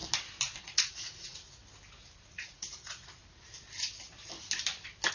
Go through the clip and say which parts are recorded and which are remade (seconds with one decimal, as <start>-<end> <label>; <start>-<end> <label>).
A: 0.0-0.6 recorded; 0.6-1.6 remade; 1.6-2.3 recorded; 2.3-3.2 remade; 3.2-5.1 recorded

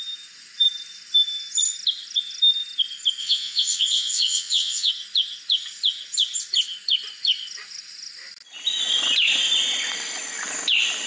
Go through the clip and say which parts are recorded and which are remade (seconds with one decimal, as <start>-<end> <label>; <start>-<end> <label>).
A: 0.0-3.2 recorded; 3.2-4.9 remade; 4.9-11.1 recorded

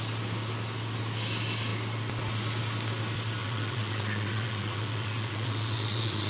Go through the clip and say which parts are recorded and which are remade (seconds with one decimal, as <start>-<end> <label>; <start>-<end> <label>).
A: 0.0-3.4 recorded; 3.4-6.3 remade